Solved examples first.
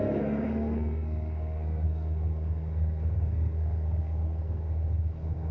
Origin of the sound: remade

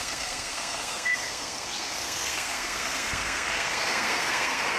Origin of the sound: remade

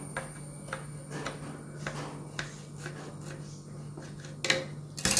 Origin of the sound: recorded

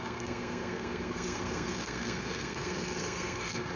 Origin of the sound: remade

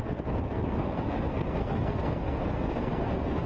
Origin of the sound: remade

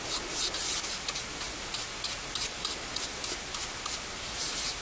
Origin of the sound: recorded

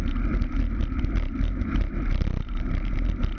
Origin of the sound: recorded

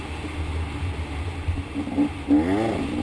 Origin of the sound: recorded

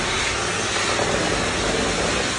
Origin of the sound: recorded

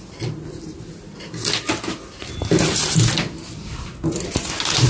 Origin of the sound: recorded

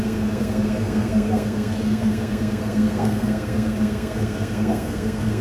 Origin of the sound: remade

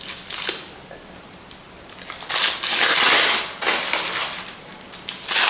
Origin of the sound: recorded